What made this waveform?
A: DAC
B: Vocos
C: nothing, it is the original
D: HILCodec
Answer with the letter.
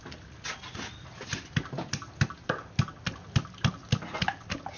C